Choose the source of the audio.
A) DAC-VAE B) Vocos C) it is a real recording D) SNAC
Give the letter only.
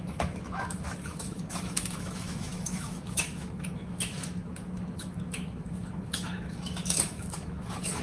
A